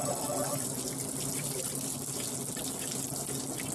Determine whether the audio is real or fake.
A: real